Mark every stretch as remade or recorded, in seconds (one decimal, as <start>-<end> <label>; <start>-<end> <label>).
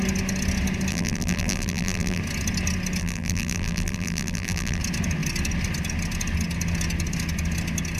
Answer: 0.0-0.9 recorded; 0.9-2.2 remade; 2.2-3.0 recorded; 3.0-4.8 remade; 4.8-8.0 recorded